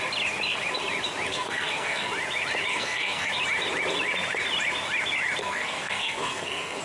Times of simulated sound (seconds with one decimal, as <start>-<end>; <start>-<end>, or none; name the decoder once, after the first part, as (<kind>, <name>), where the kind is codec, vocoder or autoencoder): 1.3-2.1 (codec, SNAC); 2.7-3.3; 5.4-6.8